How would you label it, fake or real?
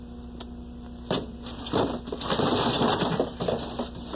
real